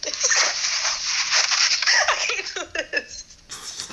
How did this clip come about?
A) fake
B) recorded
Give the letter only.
B